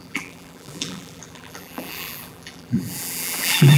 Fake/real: fake